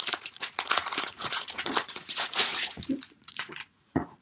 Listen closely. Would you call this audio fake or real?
fake